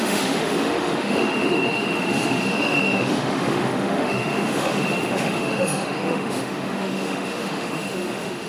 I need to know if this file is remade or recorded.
remade